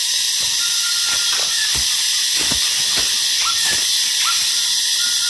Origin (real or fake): real